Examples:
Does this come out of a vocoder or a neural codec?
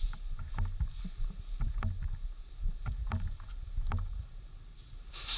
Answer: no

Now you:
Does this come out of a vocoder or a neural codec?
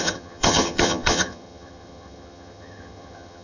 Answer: yes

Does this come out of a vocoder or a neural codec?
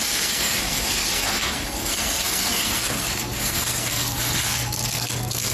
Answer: yes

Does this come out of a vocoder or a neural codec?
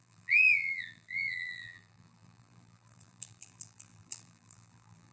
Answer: yes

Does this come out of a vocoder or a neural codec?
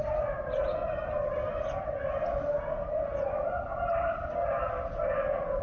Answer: no